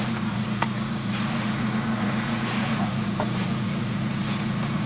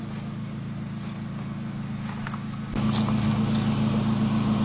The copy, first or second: first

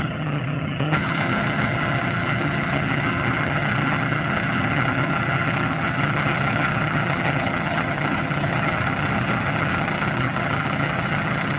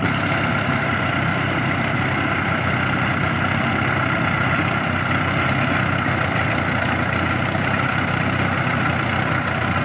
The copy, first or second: first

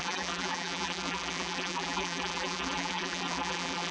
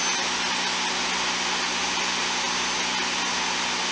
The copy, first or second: first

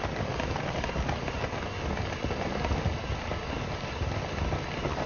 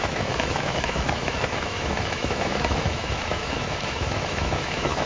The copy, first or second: second